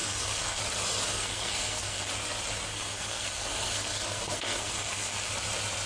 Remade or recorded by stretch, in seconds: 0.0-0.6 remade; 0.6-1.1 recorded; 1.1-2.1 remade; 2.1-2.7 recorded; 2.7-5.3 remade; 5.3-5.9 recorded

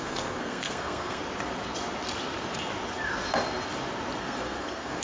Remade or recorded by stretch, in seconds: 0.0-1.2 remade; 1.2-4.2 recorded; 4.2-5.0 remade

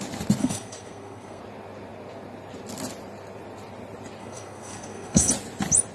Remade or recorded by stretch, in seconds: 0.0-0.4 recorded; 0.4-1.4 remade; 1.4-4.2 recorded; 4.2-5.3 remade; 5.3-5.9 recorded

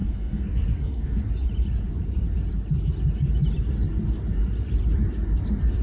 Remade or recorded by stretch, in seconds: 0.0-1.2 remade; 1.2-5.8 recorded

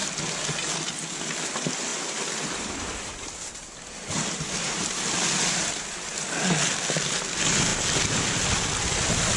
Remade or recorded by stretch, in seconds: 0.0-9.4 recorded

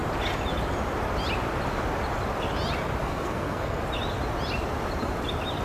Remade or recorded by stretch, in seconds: 0.0-3.0 recorded; 3.0-3.8 remade; 3.8-5.6 recorded